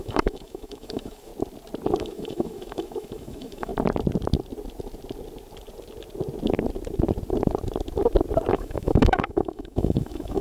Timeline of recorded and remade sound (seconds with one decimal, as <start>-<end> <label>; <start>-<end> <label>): 0.0-1.3 remade; 1.3-2.0 recorded; 2.0-3.7 remade; 3.7-8.5 recorded; 8.5-10.4 remade